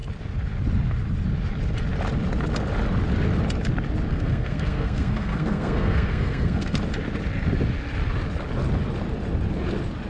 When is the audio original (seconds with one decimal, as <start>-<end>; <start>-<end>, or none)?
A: 0.0-4.1; 6.8-10.1